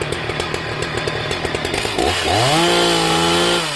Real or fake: real